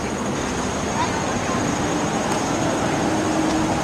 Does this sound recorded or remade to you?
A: recorded